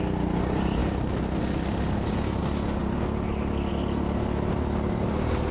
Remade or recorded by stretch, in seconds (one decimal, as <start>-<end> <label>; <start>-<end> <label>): 0.0-5.5 recorded